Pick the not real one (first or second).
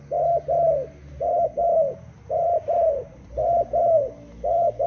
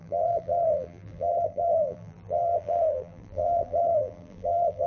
second